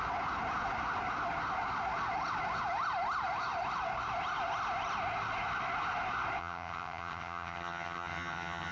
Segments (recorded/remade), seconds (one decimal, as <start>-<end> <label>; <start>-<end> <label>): 0.0-6.4 recorded; 6.4-8.7 remade